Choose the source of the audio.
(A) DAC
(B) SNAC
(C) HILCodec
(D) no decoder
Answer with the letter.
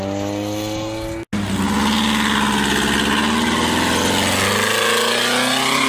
D